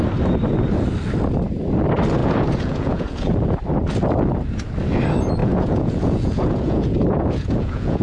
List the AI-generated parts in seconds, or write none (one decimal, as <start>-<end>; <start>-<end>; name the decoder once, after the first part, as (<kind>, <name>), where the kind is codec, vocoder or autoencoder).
2.2-3.3 (vocoder, Vocos); 5.4-8.0